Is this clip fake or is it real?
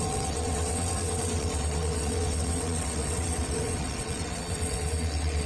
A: fake